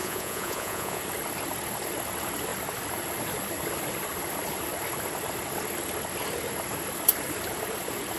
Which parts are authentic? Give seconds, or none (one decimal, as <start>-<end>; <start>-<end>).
1.0-8.2